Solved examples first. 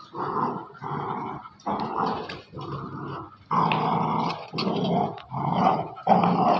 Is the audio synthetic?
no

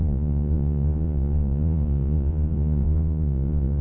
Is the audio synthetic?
yes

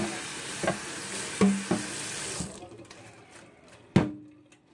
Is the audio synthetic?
no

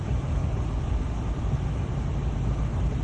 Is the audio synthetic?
no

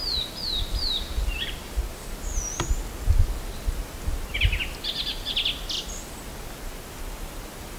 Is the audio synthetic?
no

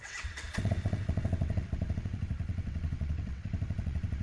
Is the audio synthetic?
yes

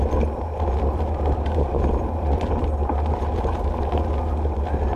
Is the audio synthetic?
no